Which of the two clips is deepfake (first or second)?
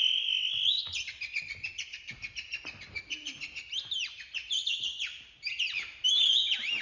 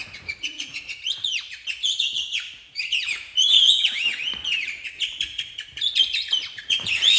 second